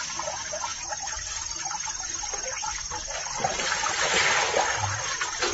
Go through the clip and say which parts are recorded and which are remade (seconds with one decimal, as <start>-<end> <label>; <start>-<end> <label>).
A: 0.0-0.7 recorded; 0.7-2.6 remade; 2.6-3.2 recorded; 3.2-4.3 remade; 4.3-5.5 recorded